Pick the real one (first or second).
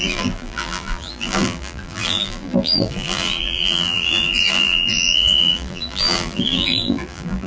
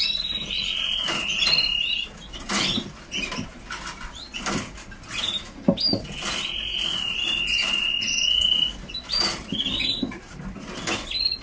second